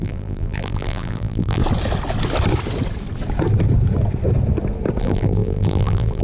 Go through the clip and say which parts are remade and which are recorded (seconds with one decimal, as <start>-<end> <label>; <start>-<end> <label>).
0.0-1.6 remade; 1.6-5.0 recorded; 5.0-6.2 remade